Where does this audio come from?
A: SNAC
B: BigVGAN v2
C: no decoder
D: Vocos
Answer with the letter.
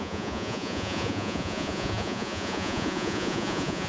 D